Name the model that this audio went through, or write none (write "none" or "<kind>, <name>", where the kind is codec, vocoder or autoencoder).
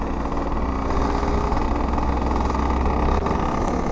none